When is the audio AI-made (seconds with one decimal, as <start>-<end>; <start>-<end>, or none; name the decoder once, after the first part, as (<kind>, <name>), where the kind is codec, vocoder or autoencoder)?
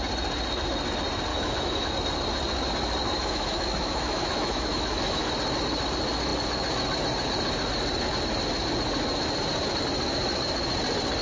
1.3-1.9 (autoencoder, DAC-VAE); 3.0-5.3